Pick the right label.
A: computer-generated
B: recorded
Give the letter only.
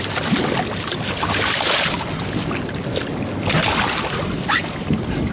B